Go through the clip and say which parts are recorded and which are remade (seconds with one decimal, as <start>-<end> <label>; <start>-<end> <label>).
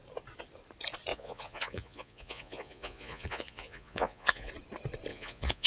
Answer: 0.0-1.1 recorded; 1.1-4.5 remade; 4.5-5.1 recorded; 5.1-5.7 remade